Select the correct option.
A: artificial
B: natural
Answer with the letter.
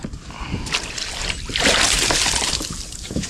B